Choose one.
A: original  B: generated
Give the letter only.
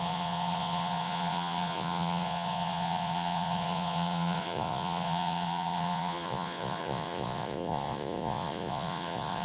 B